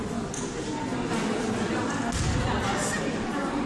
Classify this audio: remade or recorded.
recorded